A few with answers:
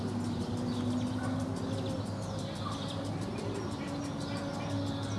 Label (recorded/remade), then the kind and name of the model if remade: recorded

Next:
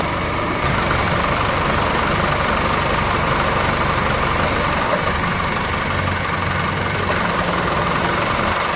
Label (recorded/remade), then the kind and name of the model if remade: remade, vocoder, BigVGAN v2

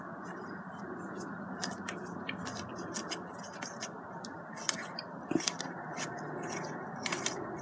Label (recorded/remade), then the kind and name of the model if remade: recorded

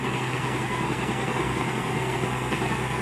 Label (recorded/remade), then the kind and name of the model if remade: remade, codec, SNAC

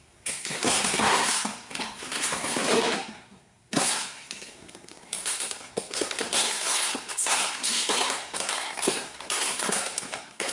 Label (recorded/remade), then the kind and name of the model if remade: remade, codec, SNAC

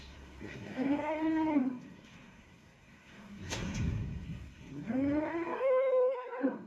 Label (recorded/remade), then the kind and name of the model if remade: remade, codec, SNAC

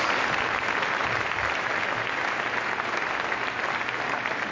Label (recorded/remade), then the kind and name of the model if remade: recorded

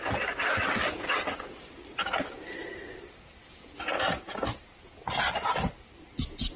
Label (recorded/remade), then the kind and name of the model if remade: recorded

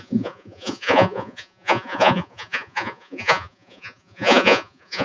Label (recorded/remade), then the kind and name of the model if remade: remade, vocoder, Vocos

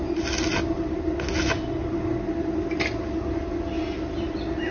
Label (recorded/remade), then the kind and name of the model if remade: recorded